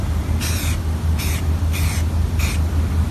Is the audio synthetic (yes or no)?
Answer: no